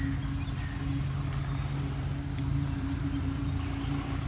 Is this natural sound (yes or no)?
yes